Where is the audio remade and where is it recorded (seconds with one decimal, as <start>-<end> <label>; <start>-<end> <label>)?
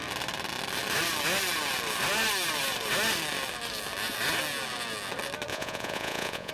0.0-5.5 recorded; 5.5-6.5 remade